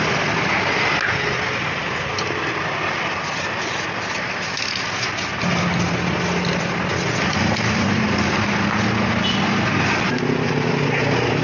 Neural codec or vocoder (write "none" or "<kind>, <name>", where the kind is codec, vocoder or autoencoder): none